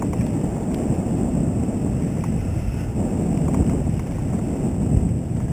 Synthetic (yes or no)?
no